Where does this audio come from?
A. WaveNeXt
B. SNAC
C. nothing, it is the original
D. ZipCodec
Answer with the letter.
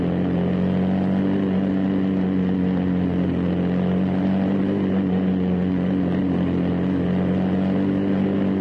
C